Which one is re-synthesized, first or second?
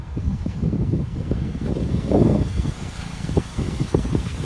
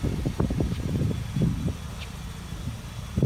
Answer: first